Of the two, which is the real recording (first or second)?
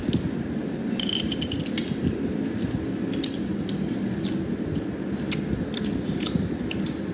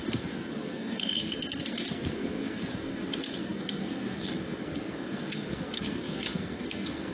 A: first